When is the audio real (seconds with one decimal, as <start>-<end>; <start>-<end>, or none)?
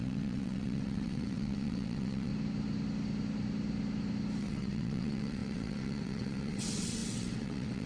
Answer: 2.3-4.4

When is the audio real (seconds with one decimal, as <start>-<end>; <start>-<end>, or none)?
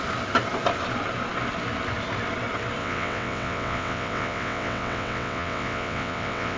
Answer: 0.0-2.8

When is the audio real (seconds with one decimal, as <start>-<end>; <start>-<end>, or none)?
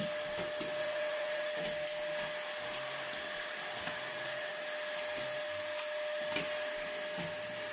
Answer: 0.0-0.8; 1.5-4.1; 4.6-7.7